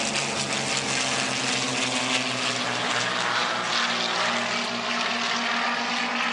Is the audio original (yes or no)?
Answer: yes